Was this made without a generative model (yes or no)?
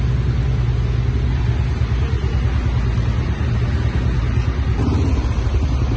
yes